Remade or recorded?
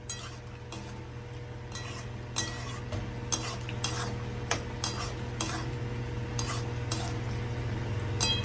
recorded